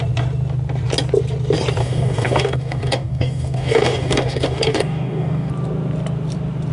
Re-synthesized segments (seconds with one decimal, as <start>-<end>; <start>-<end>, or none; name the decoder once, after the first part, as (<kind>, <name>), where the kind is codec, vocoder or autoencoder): 1.8-5.5 (codec, DAC)